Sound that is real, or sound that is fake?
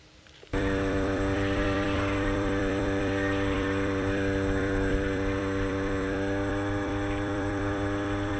fake